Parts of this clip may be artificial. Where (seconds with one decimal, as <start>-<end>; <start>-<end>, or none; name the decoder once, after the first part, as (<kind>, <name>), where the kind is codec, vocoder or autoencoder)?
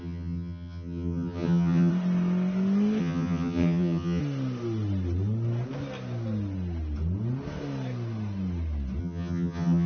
0.0-1.9 (vocoder, HiFi-GAN); 3.0-4.2; 9.0-9.9